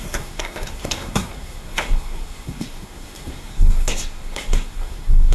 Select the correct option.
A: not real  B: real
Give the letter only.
A